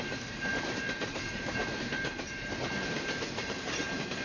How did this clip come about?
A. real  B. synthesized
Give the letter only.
B